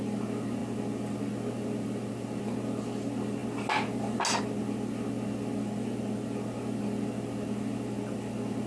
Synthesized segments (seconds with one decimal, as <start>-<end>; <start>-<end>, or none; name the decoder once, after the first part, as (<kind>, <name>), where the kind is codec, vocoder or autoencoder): none